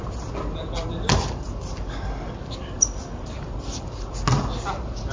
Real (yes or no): yes